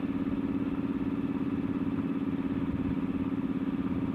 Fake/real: real